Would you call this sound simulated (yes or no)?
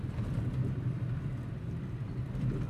no